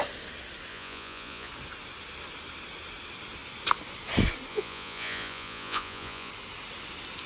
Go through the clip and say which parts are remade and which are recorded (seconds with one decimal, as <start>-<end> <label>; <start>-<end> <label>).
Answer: 0.0-0.7 recorded; 0.7-1.5 remade; 1.5-4.5 recorded; 4.5-6.3 remade; 6.3-7.3 recorded